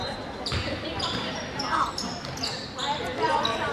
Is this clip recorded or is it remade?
remade